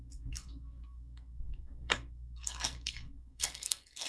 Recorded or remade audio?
remade